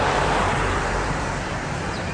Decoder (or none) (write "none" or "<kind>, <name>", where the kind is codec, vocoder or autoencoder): vocoder, BigVGAN v2